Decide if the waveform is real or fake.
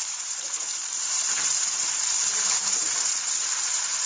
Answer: fake